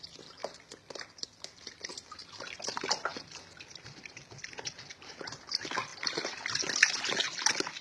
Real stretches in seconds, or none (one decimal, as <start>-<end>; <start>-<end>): 0.0-0.4; 1.7-2.2; 3.2-5.9; 7.0-7.8